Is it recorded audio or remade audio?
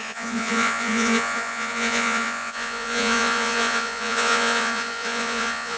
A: remade